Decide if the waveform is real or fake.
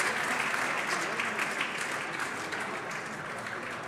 real